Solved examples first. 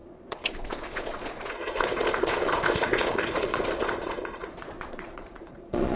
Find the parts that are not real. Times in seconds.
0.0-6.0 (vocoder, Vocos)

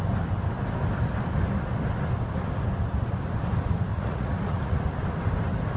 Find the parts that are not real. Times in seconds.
3.9-4.8 (vocoder, Vocos)

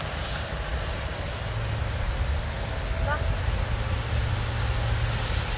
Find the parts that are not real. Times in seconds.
none

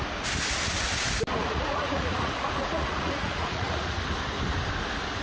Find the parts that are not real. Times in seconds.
1.4-4.0 (vocoder, Vocos)